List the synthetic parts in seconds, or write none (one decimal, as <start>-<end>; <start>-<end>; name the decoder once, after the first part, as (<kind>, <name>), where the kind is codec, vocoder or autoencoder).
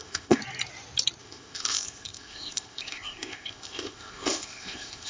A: 0.0-0.4 (codec, ZipCodec); 1.2-5.1